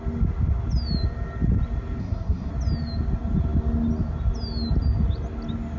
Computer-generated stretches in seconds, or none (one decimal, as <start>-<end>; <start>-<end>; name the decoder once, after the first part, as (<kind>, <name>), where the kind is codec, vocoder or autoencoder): 2.0-2.5 (codec, SNAC)

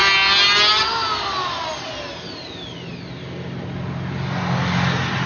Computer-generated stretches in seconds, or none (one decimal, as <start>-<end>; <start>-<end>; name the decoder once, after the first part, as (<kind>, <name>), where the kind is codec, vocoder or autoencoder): none

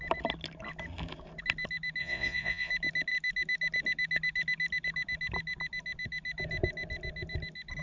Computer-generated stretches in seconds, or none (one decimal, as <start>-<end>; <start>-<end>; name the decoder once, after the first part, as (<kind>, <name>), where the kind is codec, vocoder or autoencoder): 2.0-2.7 (vocoder, Vocos)

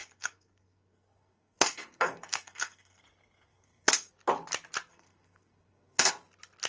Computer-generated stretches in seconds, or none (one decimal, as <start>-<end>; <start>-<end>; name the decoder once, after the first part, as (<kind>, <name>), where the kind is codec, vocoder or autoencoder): 0.0-3.0 (codec, SNAC); 3.5-4.1; 4.9-6.1